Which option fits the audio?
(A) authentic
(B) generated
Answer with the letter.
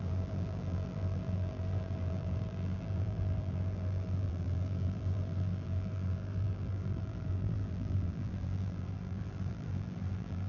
B